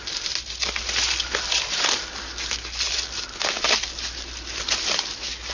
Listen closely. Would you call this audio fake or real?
real